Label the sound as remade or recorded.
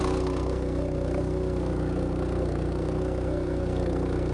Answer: remade